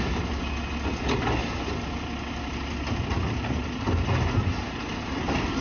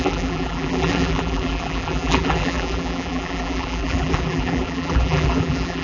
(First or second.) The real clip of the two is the first